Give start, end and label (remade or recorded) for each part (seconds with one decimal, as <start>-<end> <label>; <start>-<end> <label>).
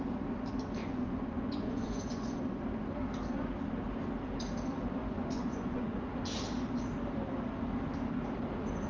0.0-0.8 recorded; 0.8-2.6 remade; 2.6-5.0 recorded; 5.0-6.1 remade; 6.1-8.9 recorded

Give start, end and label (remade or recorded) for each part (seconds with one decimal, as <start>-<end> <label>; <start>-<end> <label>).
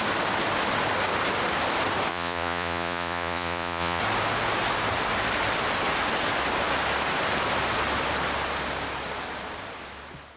0.0-2.1 recorded; 2.1-4.0 remade; 4.0-10.4 recorded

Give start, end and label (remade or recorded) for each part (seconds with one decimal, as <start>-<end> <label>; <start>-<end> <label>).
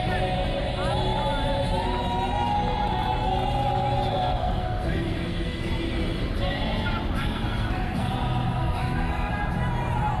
0.0-4.1 recorded; 4.1-5.7 remade; 5.7-7.2 recorded; 7.2-8.1 remade; 8.1-8.6 recorded; 8.6-9.3 remade; 9.3-10.2 recorded